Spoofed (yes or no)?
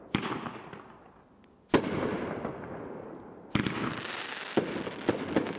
no